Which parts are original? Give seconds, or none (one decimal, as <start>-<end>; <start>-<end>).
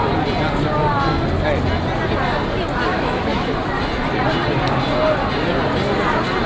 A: 0.0-2.9; 3.5-6.5